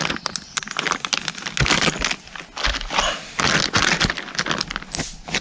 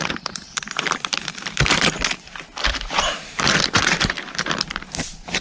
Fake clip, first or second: second